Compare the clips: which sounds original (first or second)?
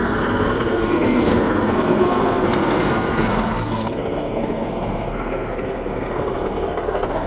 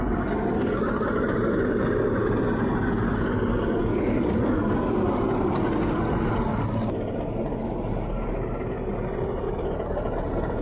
second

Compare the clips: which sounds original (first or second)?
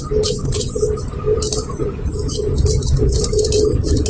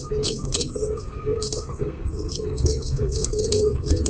first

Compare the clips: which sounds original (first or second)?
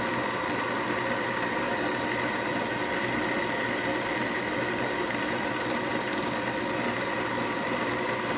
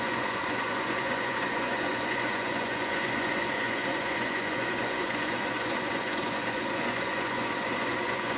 first